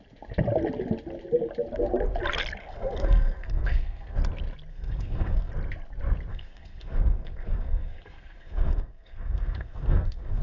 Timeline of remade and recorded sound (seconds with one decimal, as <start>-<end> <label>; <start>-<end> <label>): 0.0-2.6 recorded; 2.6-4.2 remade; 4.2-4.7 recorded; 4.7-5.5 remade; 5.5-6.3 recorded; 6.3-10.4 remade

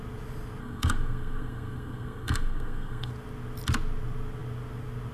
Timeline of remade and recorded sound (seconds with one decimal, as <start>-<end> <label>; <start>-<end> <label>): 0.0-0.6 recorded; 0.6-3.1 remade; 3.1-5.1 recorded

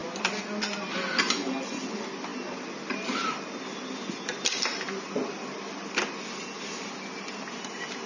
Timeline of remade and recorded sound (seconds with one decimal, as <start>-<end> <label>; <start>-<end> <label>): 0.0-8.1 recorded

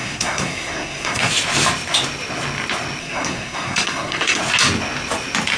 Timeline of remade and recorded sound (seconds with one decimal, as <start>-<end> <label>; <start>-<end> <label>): 0.0-1.3 remade; 1.3-3.0 recorded; 3.0-4.4 remade; 4.4-5.6 recorded

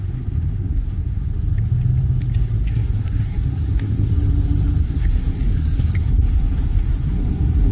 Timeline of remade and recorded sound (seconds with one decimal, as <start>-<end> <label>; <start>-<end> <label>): 0.0-1.3 remade; 1.3-2.6 recorded; 2.6-4.1 remade; 4.1-4.8 recorded; 4.8-7.7 remade